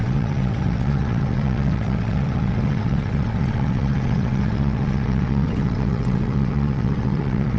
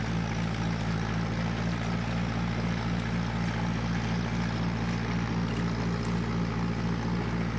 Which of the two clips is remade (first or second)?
first